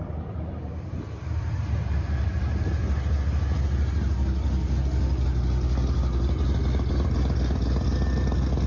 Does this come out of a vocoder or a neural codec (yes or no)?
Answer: no